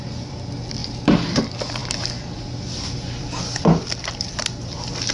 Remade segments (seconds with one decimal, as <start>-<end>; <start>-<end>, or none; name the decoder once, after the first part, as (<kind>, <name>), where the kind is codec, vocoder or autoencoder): 0.8-1.4 (vocoder, BigVGAN v2)